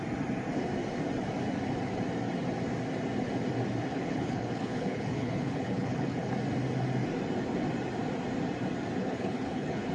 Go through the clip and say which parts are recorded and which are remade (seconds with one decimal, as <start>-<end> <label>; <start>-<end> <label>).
0.0-3.9 recorded; 3.9-6.3 remade; 6.3-9.0 recorded; 9.0-9.9 remade